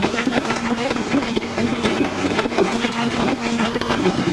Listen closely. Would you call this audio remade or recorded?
remade